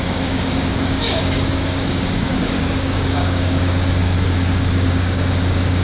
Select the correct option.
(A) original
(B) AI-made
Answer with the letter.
B